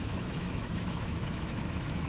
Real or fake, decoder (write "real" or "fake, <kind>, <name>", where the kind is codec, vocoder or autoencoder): fake, autoencoder, DAC-VAE